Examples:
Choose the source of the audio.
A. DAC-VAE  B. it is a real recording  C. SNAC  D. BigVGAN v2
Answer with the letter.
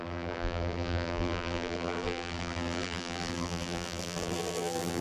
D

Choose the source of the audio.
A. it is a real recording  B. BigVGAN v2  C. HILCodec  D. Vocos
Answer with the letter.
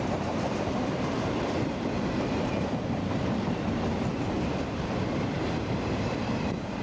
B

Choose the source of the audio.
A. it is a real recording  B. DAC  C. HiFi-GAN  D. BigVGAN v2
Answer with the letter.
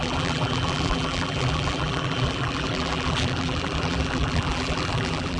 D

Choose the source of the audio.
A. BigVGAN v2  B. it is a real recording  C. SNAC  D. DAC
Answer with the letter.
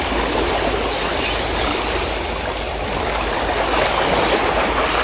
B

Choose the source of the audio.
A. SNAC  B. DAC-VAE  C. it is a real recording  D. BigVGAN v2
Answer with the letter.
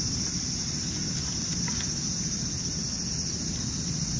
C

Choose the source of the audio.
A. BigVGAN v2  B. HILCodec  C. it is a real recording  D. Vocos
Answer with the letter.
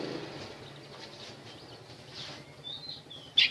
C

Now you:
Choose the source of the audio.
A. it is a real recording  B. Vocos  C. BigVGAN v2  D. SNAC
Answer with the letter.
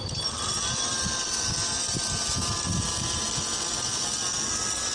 A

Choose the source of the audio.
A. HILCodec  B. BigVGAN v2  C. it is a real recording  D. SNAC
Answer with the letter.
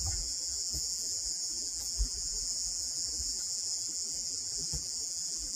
B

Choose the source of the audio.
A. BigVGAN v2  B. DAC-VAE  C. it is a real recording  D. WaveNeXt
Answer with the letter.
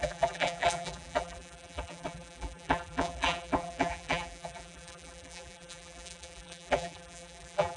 A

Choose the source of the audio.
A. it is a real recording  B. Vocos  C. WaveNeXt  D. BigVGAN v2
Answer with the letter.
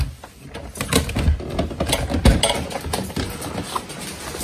A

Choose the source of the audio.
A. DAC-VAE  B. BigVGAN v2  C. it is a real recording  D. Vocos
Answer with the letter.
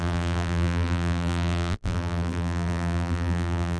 B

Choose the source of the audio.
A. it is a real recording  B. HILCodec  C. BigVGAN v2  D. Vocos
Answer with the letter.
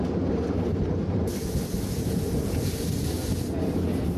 A